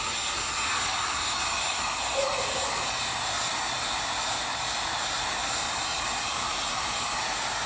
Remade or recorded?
recorded